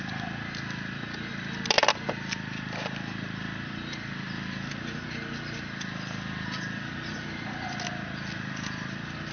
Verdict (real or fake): real